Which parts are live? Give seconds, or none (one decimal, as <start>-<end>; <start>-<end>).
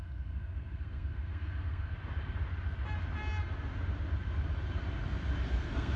1.9-5.5